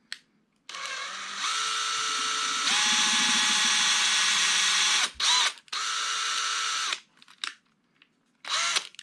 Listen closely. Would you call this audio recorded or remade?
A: recorded